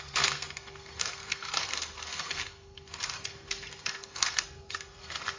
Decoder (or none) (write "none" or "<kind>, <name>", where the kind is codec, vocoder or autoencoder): codec, SNAC